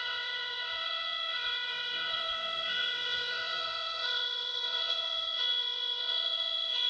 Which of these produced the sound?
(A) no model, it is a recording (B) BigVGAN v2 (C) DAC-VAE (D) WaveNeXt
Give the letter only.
D